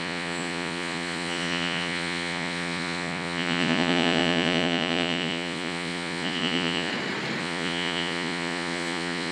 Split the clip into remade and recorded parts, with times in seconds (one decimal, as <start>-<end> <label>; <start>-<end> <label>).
0.0-6.9 remade; 6.9-7.4 recorded; 7.4-9.3 remade